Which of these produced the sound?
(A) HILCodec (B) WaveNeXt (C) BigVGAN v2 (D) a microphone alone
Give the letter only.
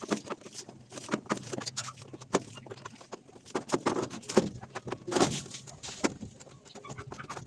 D